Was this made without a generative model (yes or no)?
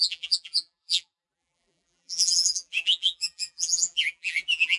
no